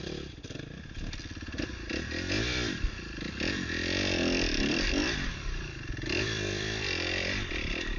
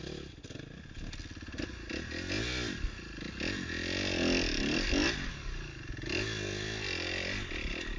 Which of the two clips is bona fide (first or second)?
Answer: second